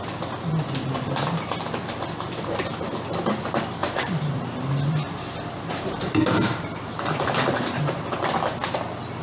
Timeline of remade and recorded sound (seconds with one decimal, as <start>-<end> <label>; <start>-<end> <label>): 0.0-3.8 recorded; 3.8-7.8 remade; 7.8-9.2 recorded